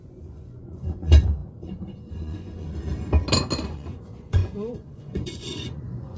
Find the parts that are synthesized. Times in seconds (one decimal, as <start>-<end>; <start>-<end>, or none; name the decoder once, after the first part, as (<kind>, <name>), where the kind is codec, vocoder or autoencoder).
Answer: 0.0-2.9 (vocoder, Vocos); 3.6-6.2